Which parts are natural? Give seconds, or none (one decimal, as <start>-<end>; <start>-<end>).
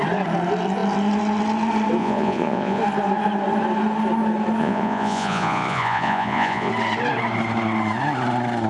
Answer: 0.0-2.0; 2.8-4.6; 6.7-8.7